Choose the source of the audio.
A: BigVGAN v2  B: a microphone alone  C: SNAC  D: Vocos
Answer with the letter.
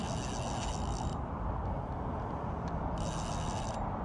B